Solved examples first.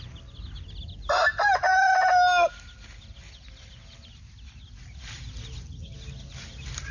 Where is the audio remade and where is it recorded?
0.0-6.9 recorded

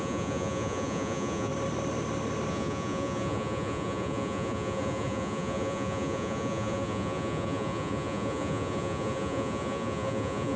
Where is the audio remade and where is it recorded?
0.0-1.5 remade; 1.5-2.5 recorded; 2.5-10.6 remade